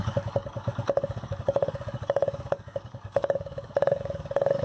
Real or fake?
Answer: fake